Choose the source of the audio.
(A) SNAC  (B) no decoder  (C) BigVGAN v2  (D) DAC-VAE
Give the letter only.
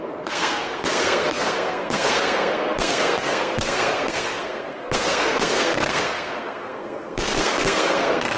A